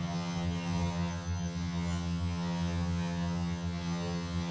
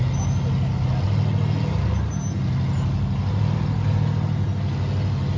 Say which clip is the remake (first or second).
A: first